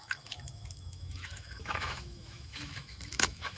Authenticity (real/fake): fake